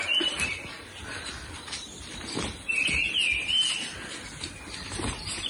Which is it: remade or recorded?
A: remade